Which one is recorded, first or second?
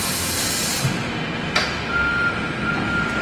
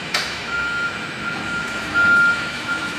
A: first